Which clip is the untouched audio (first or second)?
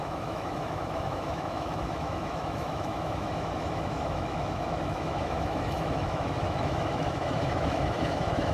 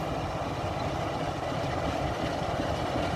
second